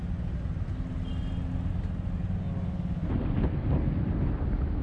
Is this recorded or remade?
recorded